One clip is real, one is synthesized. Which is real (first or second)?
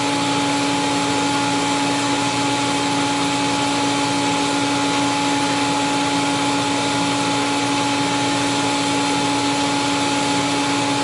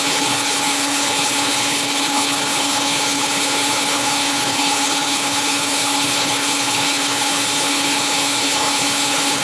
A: first